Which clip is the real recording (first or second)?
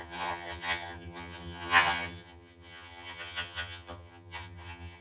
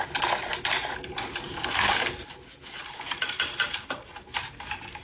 second